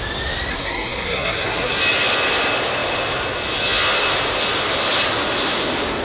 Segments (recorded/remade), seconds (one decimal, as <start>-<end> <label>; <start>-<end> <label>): 0.0-0.5 recorded; 0.5-1.8 remade; 1.8-6.0 recorded